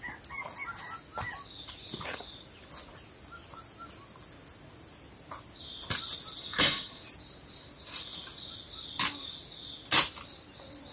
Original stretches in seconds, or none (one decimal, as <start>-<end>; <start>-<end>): 0.0-6.4; 7.0-10.9